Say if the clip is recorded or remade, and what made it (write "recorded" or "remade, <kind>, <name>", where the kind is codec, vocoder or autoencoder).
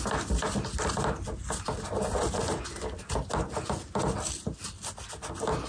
recorded